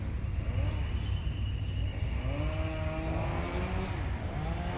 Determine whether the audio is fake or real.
real